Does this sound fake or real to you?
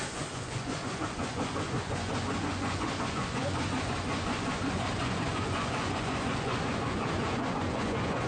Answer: fake